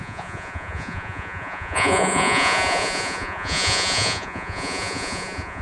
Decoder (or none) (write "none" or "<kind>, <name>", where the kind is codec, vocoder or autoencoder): vocoder, Vocos